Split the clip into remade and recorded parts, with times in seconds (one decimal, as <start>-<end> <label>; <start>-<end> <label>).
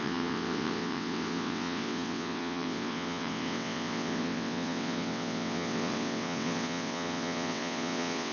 0.0-8.3 remade